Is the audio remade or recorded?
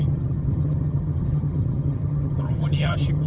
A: remade